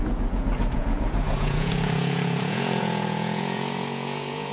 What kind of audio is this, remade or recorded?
remade